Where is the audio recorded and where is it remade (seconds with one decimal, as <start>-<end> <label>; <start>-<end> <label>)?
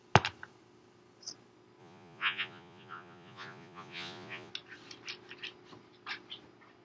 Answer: 0.0-1.8 recorded; 1.8-4.5 remade; 4.5-6.8 recorded